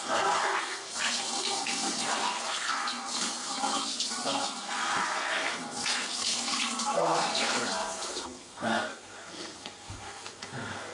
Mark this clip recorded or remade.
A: remade